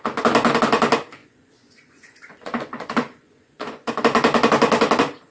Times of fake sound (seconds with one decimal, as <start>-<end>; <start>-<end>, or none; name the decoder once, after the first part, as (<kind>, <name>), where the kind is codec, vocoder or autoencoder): 1.2-3.9 (vocoder, Vocos)

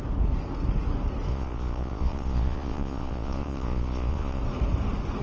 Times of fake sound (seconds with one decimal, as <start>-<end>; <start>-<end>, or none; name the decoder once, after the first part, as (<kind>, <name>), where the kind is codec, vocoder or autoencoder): 1.3-4.4 (vocoder, Vocos)

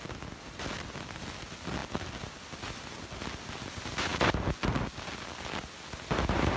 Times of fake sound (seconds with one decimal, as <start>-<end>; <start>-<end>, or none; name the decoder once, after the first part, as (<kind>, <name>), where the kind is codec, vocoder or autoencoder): none

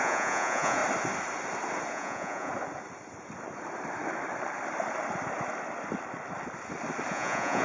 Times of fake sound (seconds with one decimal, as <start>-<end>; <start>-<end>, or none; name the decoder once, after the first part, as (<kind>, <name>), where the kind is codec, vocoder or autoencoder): 0.0-0.8 (vocoder, Vocos); 1.9-2.5; 7.1-7.6

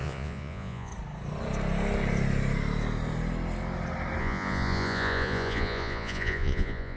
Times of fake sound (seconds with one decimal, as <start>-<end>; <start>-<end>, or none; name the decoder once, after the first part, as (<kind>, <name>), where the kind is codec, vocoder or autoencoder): 0.0-0.9 (vocoder, Vocos); 4.2-7.0

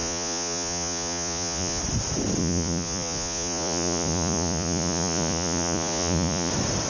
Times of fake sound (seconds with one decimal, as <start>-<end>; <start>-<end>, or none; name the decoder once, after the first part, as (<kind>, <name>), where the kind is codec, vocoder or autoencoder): 0.0-1.8 (vocoder, Vocos); 2.4-6.5